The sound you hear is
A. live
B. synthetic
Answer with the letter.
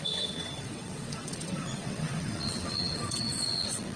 B